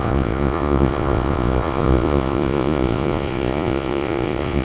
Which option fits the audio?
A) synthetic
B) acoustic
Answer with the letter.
A